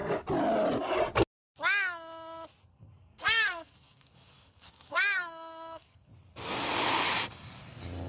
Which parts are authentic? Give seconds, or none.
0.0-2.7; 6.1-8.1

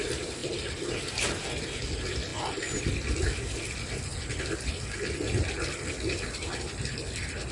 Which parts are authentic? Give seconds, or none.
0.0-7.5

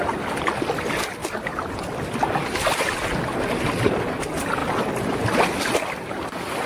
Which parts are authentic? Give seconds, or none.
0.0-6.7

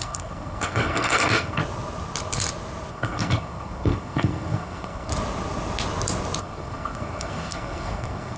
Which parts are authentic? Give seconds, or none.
1.6-2.9; 5.1-6.4